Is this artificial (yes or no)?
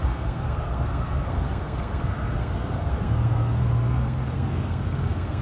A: yes